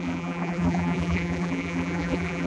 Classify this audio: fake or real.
fake